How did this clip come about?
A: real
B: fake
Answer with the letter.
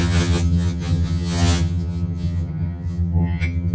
B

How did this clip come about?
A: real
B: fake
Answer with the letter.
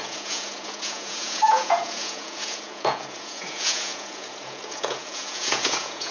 B